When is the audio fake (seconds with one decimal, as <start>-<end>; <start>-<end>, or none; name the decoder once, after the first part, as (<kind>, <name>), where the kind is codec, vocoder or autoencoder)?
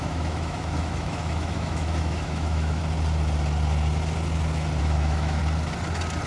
0.0-2.8 (autoencoder, DAC-VAE); 4.8-5.4